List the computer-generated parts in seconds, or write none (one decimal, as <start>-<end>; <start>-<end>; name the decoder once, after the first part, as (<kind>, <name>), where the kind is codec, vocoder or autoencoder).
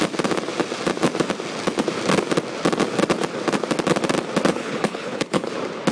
4.5-5.5 (codec, HILCodec)